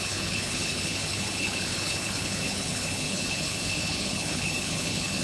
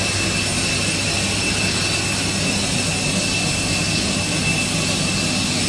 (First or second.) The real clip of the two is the second